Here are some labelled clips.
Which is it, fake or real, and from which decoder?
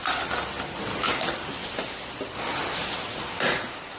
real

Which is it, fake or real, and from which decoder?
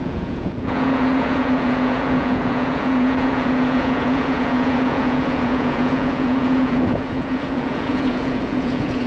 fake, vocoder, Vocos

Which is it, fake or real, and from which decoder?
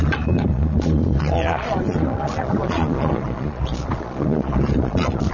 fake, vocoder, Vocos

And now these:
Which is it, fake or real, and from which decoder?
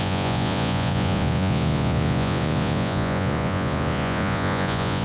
fake, vocoder, Vocos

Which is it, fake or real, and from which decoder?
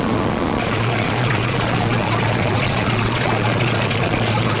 fake, vocoder, Vocos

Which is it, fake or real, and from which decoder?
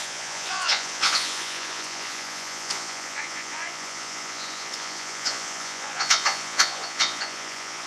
fake, vocoder, Vocos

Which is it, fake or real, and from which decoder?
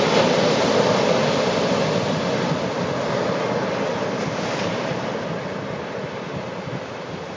real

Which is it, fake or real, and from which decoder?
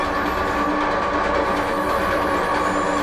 real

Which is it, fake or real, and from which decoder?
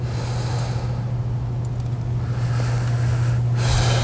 real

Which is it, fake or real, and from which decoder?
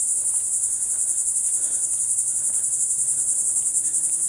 real